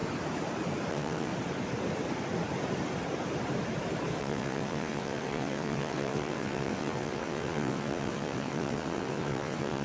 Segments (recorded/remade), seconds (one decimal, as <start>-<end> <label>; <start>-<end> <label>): 0.0-0.9 recorded; 0.9-1.3 remade; 1.3-4.2 recorded; 4.2-9.8 remade